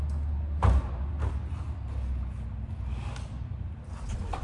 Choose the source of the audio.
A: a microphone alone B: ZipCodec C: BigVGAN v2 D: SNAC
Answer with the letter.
A